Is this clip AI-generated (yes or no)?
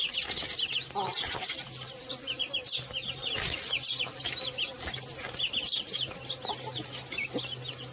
no